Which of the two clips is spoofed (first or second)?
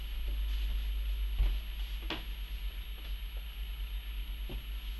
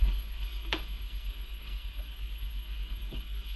second